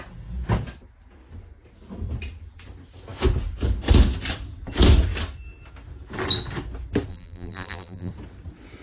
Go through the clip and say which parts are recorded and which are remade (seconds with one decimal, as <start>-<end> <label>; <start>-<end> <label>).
0.0-7.1 recorded; 7.1-8.1 remade; 8.1-8.8 recorded